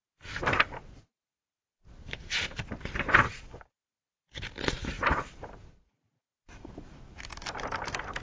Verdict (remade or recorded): remade